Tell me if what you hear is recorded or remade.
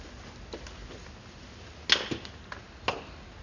recorded